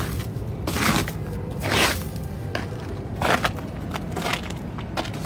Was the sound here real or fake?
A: real